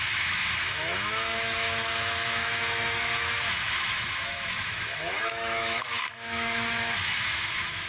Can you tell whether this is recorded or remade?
remade